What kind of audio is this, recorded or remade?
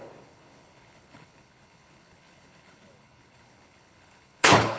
remade